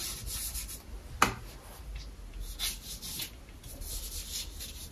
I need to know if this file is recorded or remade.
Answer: recorded